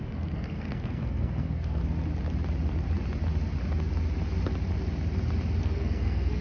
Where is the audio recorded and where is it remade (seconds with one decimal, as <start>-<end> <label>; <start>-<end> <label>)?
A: 0.0-1.8 remade; 1.8-5.6 recorded; 5.6-6.4 remade